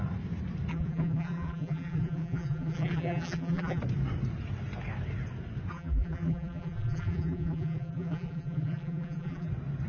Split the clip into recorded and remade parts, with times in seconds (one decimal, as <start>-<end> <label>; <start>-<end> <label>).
0.0-0.7 recorded; 0.7-3.8 remade; 3.8-5.7 recorded; 5.7-9.5 remade; 9.5-9.9 recorded